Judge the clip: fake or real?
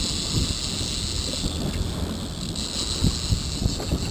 real